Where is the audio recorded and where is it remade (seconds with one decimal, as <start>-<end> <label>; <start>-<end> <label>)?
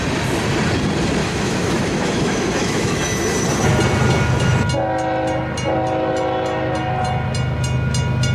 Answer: 0.0-1.2 recorded; 1.2-3.0 remade; 3.0-8.3 recorded